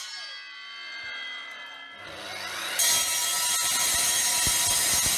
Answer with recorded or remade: recorded